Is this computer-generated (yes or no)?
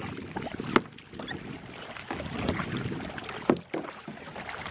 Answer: no